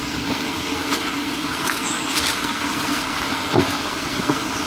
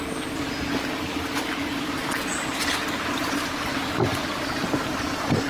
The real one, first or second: second